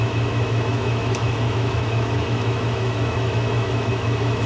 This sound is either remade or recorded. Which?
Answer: remade